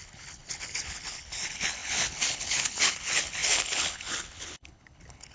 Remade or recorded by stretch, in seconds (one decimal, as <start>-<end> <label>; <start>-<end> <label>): 0.0-5.3 remade